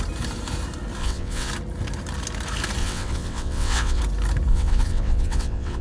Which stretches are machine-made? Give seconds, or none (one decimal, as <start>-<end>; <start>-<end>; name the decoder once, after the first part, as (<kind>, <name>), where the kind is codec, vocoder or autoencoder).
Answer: 1.0-1.5 (vocoder, WaveNeXt); 2.8-4.0; 4.5-5.8